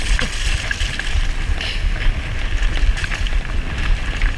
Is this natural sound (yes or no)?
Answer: yes